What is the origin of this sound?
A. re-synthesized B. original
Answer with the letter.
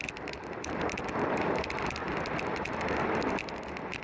A